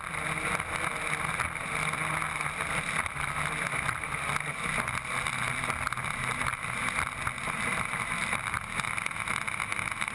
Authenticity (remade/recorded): recorded